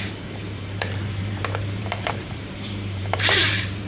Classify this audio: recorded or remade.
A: remade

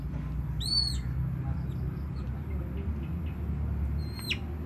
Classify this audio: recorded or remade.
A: recorded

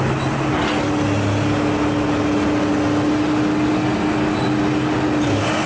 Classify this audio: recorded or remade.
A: recorded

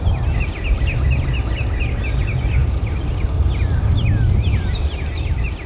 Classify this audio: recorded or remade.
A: recorded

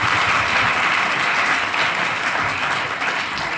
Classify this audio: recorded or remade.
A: recorded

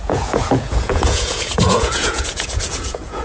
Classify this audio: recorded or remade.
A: remade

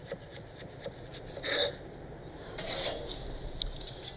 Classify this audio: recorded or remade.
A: recorded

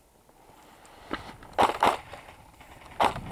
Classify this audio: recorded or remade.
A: recorded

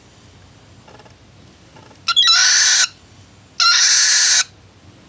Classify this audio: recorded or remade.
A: recorded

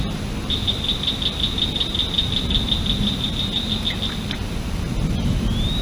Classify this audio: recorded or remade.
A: recorded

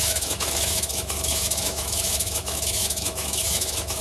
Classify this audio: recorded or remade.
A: remade